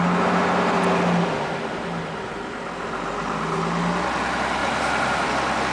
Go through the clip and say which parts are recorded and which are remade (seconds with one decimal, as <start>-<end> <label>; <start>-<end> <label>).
0.0-4.6 recorded; 4.6-5.3 remade; 5.3-5.7 recorded